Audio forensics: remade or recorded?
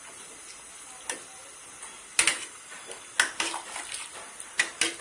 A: recorded